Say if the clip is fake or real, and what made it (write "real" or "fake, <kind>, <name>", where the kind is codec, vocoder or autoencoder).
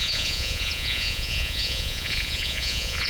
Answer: fake, vocoder, Vocos